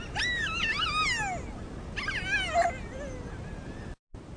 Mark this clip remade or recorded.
recorded